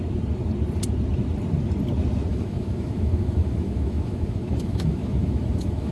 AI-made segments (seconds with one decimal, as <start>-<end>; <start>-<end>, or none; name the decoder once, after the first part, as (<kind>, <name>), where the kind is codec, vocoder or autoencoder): 2.3-5.9 (autoencoder, DAC-VAE)